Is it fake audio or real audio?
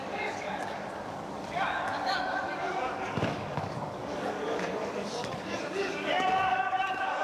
fake